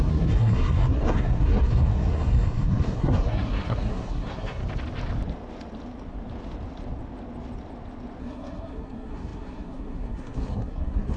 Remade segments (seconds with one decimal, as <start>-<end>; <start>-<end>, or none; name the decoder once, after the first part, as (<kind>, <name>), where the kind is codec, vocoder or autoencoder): 0.0-4.6 (codec, SNAC); 8.2-11.2

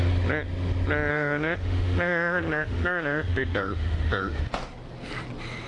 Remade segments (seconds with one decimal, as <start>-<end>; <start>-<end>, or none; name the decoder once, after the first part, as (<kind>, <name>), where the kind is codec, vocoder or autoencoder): 1.1-4.5 (autoencoder, DAC-VAE)